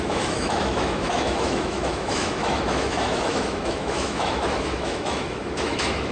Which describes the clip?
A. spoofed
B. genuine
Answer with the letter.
A